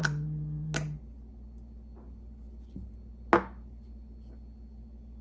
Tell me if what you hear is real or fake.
real